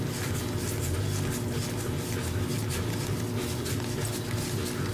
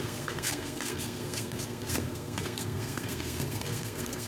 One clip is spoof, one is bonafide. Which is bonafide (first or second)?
first